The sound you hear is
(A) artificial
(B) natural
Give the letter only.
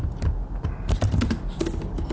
B